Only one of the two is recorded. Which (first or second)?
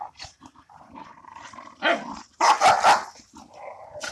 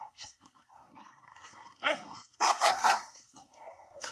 first